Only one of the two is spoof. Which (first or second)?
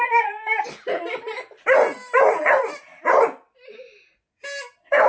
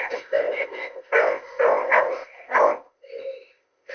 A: second